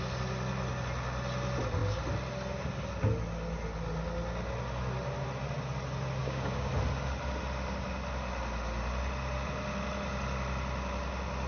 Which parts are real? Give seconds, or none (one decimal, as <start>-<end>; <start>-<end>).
0.0-6.2; 6.7-11.5